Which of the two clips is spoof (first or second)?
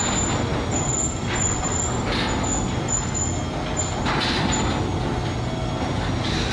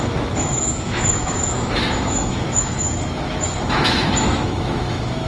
second